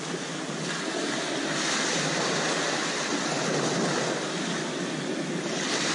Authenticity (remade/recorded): recorded